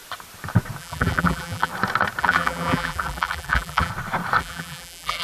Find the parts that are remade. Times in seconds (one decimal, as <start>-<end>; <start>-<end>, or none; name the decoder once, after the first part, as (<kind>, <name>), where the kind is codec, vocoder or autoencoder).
0.8-1.7 (vocoder, BigVGAN v2); 2.2-3.9; 4.4-5.2